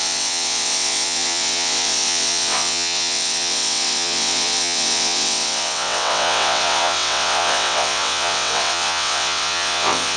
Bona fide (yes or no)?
no